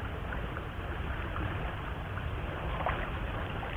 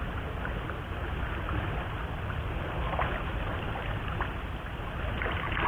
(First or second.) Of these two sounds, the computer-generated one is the first